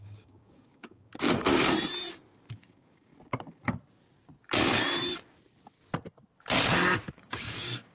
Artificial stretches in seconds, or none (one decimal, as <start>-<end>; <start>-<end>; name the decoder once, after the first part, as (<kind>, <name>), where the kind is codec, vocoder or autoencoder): 0.0-1.1 (codec, DAC); 2.5-3.1; 7.1-7.9